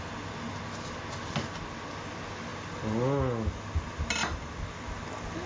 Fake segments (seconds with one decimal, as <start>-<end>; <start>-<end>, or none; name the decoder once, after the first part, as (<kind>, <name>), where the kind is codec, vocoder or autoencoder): none